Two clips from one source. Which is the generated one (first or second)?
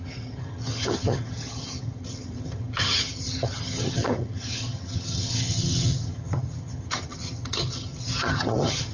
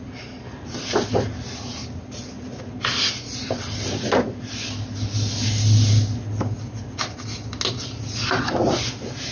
first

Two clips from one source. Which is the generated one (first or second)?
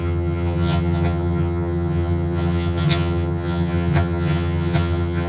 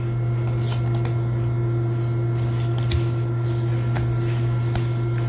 first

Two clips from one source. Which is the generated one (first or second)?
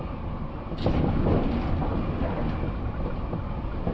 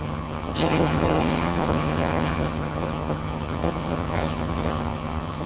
second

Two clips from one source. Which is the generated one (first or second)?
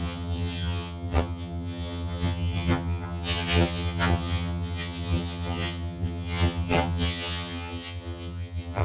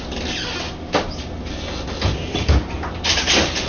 first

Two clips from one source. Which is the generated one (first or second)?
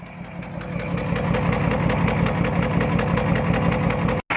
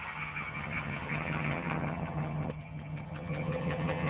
second